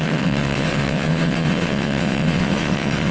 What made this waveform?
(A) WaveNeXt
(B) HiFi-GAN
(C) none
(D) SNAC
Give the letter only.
A